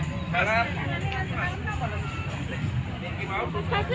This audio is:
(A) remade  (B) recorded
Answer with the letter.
B